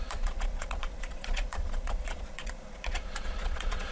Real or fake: fake